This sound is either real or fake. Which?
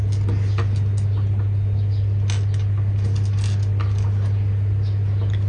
real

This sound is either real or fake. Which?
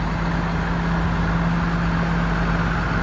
real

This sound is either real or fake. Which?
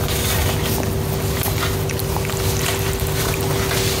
real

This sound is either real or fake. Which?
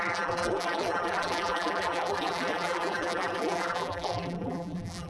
fake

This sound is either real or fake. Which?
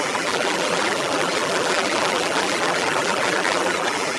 fake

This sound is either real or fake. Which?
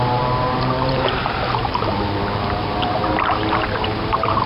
fake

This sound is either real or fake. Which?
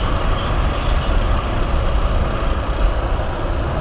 real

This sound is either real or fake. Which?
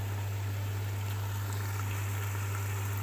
real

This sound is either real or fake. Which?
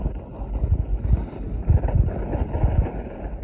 real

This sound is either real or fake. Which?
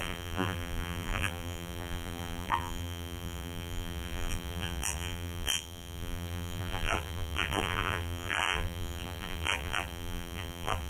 fake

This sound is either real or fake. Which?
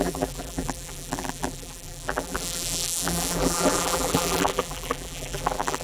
fake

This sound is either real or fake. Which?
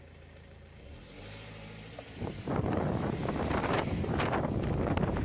fake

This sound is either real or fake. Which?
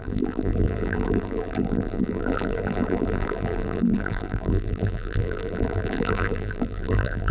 fake